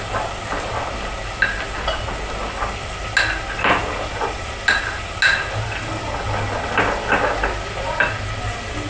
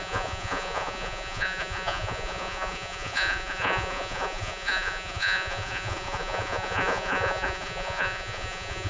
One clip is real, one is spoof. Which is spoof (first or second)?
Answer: second